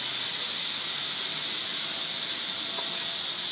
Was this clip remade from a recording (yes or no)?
no